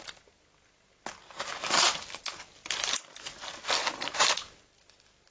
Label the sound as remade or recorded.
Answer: recorded